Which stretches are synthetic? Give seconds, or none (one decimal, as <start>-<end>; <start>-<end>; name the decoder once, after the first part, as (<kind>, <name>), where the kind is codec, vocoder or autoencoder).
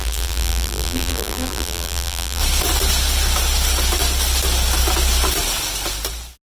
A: 0.0-2.4 (vocoder, BigVGAN v2)